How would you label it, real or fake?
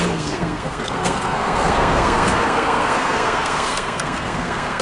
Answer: fake